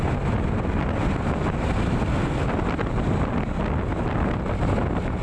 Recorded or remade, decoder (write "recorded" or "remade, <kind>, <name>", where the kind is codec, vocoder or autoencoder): recorded